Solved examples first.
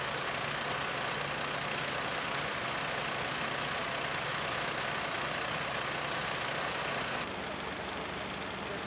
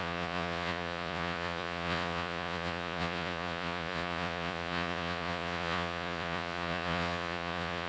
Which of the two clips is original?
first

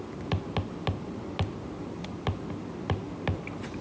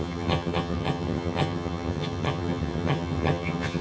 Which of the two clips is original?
first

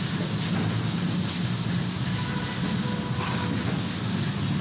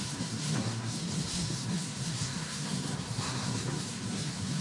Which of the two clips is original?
first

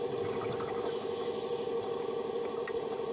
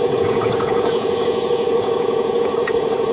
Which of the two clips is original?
first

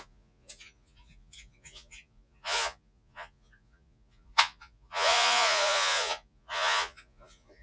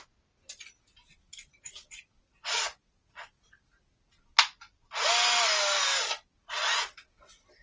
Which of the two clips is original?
second